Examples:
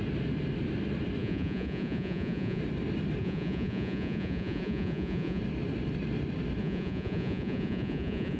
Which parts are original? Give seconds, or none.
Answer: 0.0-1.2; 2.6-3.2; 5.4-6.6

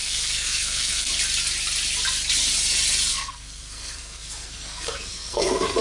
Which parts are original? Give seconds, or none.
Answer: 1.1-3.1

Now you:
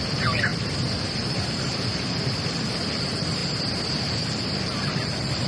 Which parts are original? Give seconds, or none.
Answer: 3.4-4.0

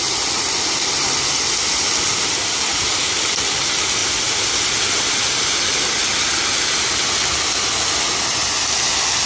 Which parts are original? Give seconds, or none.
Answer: 0.0-9.3

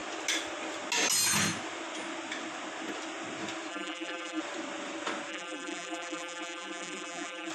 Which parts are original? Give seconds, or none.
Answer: 0.0-3.7; 4.4-5.3

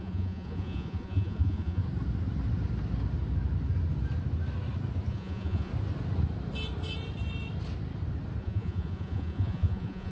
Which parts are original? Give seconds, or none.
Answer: 1.8-5.1; 5.7-8.4

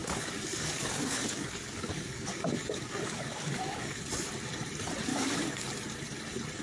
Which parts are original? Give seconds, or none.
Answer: 4.0-5.1; 5.7-6.6